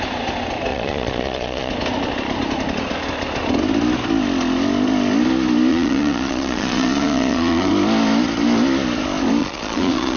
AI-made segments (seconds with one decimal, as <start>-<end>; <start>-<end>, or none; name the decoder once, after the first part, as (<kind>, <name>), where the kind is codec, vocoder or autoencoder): 0.7-1.7 (vocoder, Vocos); 5.7-7.7; 9.4-10.2